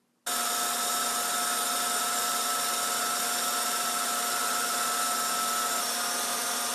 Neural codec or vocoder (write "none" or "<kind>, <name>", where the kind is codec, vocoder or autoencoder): none